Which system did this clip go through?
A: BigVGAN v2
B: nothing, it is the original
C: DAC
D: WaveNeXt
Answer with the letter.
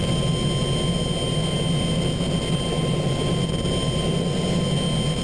B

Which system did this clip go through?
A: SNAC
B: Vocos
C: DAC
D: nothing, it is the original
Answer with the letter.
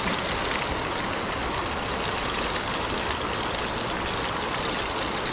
D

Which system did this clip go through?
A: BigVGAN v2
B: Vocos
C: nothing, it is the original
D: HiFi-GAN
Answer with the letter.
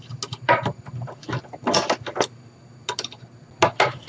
C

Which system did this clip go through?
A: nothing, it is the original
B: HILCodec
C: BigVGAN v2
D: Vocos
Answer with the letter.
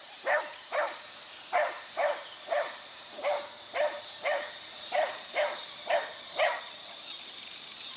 C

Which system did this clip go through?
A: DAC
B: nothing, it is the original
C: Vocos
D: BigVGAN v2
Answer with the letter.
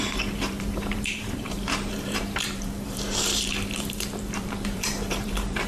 D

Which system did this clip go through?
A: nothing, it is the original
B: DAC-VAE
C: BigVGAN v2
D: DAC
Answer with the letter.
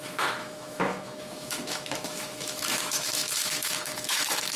B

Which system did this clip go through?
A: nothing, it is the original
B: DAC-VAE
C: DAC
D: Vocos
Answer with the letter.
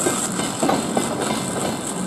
A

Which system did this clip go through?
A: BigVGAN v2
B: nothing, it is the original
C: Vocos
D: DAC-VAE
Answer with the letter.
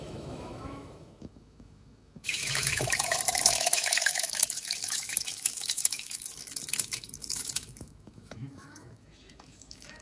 D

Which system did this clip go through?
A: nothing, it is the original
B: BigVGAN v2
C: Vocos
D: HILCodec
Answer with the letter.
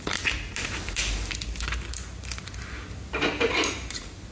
A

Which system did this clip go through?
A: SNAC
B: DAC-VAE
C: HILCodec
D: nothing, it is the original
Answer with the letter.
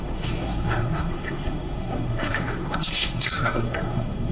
A